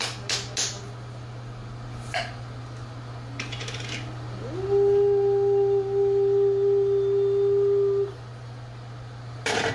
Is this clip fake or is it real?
real